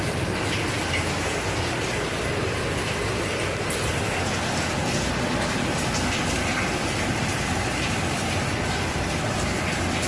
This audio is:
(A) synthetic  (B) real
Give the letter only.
B